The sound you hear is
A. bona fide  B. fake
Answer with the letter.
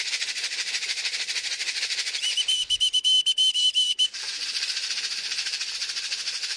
B